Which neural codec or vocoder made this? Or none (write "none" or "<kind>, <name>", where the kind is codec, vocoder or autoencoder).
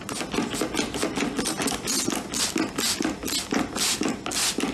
none